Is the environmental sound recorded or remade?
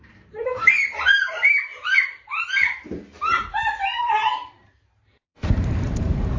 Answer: remade